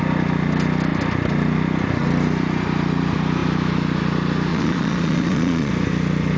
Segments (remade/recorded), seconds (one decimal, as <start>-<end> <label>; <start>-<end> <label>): 0.0-4.5 recorded; 4.5-5.7 remade; 5.7-6.4 recorded